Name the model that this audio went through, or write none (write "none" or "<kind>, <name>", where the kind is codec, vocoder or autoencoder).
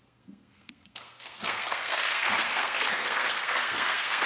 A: codec, SNAC